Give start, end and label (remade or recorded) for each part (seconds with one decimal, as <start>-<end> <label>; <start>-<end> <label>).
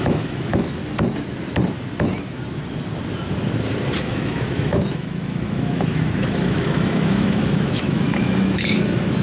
0.0-0.8 remade; 0.8-4.0 recorded; 4.0-9.2 remade